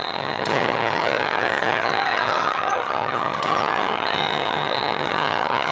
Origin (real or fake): fake